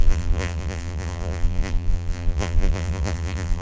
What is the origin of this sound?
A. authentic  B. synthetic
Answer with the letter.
B